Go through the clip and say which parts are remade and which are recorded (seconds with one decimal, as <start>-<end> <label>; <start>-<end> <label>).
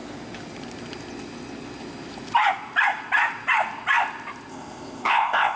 0.0-4.5 recorded; 4.5-5.6 remade